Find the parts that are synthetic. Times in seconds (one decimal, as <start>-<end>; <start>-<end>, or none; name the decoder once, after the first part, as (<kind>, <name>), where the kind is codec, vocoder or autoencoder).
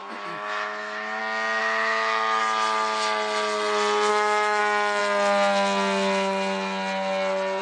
0.0-1.2 (autoencoder, DAC-VAE); 1.6-2.4; 4.1-4.6